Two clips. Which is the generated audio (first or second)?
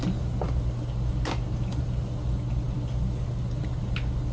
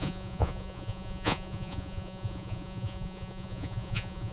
second